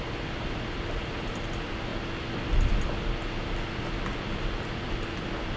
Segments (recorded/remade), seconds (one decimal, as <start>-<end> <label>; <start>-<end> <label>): 0.0-1.9 remade; 1.9-4.6 recorded; 4.6-5.6 remade